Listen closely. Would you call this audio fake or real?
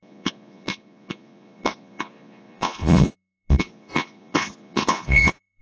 fake